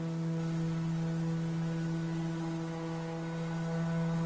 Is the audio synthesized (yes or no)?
no